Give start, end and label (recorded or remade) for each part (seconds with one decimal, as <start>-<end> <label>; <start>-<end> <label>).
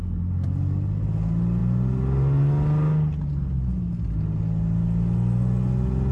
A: 0.0-6.1 recorded